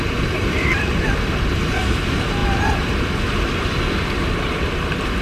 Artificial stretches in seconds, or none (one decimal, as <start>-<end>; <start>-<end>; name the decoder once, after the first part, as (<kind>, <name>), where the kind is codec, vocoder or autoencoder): none